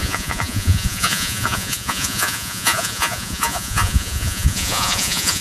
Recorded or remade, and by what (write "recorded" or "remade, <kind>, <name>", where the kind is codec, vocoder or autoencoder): remade, vocoder, Vocos